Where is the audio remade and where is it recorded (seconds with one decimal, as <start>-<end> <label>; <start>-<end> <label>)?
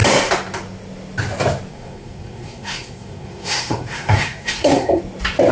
0.0-1.7 recorded; 1.7-5.0 remade; 5.0-5.5 recorded